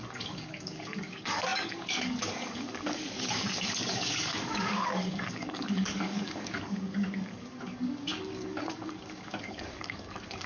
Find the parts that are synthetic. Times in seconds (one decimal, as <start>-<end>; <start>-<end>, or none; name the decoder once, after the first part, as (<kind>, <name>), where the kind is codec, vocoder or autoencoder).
0.0-10.5 (codec, DAC)